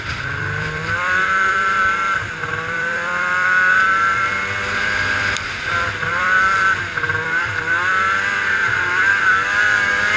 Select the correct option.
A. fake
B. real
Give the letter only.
A